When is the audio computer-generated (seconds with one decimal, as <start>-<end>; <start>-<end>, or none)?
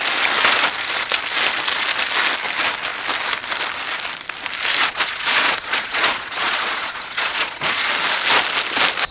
4.8-7.9